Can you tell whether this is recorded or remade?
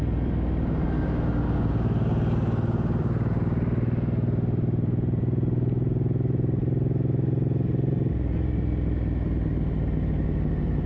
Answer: recorded